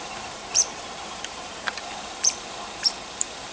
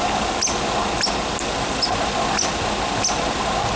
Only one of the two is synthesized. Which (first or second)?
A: first